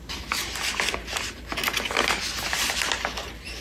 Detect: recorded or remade recorded